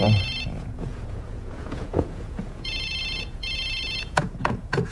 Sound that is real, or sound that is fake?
fake